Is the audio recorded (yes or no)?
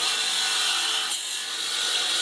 yes